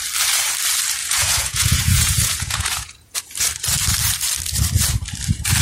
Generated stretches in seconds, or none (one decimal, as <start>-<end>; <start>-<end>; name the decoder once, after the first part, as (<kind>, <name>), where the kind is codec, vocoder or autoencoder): 1.0-3.2 (vocoder, Vocos)